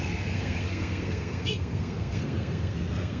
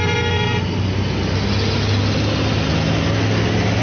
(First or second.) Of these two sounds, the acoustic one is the second